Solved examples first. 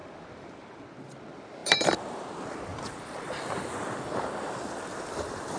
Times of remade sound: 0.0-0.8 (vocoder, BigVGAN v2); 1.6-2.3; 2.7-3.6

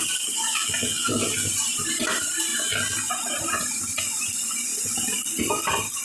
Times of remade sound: 0.5-1.5 (vocoder, BigVGAN v2); 2.5-3.1

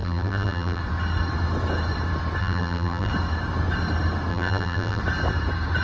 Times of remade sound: 0.0-0.8 (vocoder, BigVGAN v2); 2.4-3.1; 4.3-5.0

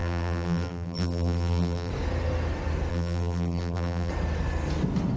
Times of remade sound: 0.0-1.9 (vocoder, BigVGAN v2); 2.9-4.1

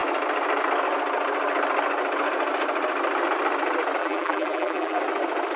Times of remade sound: 4.0-5.0 (vocoder, BigVGAN v2)